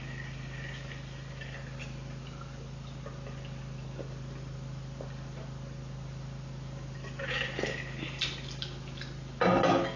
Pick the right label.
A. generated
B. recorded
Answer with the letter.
B